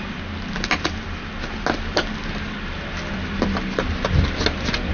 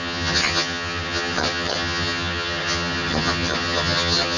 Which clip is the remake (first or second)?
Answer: second